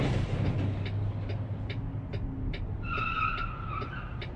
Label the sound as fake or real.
real